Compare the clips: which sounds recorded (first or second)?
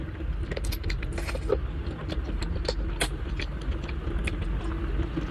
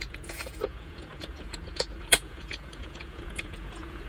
first